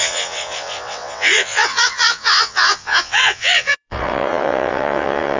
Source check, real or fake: fake